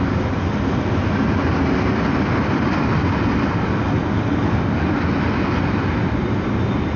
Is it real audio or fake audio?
real